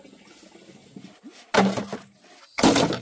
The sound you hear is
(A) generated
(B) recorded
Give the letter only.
B